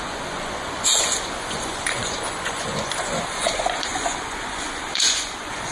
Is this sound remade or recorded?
remade